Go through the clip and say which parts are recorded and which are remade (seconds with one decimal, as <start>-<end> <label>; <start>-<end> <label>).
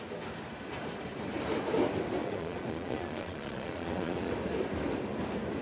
0.0-2.2 recorded; 2.2-4.3 remade; 4.3-5.6 recorded